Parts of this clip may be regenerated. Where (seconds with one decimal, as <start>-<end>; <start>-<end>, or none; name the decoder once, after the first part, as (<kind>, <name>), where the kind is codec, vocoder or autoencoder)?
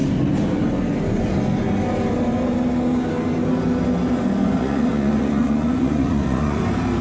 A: 4.4-6.6 (vocoder, Vocos)